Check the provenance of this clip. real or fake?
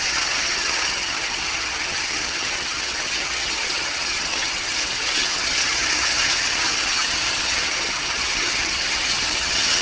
fake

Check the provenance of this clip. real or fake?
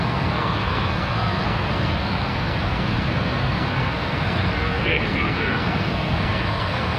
fake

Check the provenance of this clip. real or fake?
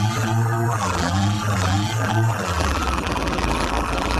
fake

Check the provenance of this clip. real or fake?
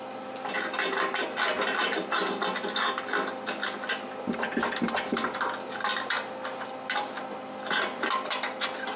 real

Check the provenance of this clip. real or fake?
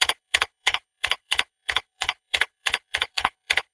fake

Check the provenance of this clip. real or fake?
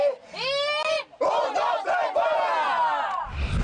real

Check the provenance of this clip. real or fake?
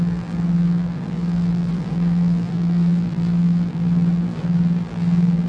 fake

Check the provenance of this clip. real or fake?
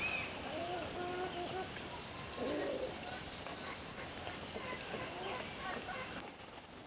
real